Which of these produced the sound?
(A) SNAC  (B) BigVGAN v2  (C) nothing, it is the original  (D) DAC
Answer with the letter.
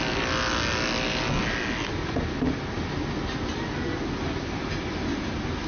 C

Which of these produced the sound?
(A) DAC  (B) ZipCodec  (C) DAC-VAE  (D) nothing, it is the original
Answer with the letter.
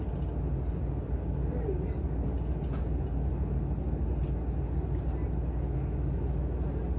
D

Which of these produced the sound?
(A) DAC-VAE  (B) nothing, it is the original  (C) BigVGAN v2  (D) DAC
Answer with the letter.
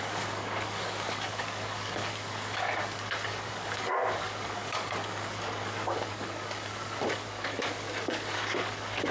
D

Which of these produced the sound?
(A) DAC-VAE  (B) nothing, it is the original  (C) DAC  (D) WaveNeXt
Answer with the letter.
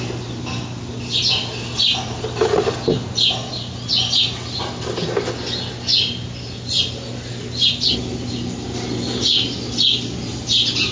B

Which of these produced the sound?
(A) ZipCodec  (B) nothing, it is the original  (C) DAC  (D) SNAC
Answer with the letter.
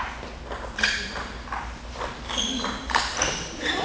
B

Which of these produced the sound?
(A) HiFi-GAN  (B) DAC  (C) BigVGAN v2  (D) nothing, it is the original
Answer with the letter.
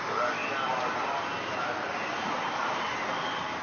D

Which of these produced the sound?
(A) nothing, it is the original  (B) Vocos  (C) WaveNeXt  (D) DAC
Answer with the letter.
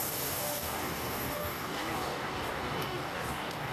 D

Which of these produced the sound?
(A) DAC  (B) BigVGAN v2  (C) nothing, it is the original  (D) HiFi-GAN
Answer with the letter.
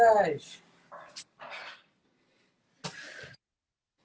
C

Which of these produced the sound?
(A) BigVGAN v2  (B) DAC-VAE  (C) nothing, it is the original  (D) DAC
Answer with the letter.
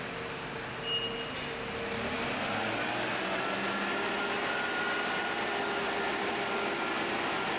C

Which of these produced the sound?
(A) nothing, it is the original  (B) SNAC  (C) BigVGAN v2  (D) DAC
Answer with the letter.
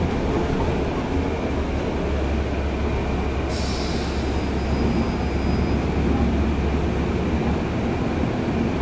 A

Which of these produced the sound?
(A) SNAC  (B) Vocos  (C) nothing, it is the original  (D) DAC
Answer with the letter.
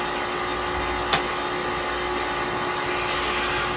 C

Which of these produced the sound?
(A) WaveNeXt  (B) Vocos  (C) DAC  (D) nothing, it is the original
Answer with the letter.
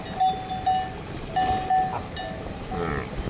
D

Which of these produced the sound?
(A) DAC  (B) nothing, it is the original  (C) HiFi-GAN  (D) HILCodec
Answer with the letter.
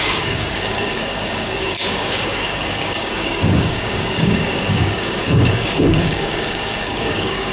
A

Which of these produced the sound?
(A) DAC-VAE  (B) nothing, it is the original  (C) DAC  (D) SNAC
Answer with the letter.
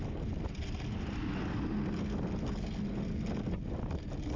B